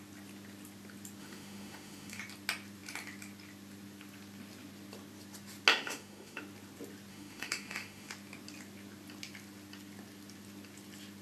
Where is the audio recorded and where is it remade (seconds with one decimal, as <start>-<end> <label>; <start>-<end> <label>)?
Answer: 0.0-1.2 recorded; 1.2-2.2 remade; 2.2-5.7 recorded; 5.7-6.4 remade; 6.4-7.1 recorded; 7.1-8.1 remade; 8.1-11.2 recorded